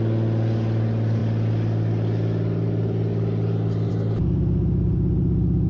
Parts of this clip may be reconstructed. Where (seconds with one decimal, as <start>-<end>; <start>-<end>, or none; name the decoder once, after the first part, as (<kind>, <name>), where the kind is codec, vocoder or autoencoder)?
none